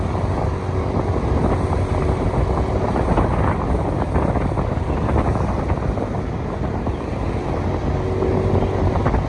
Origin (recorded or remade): recorded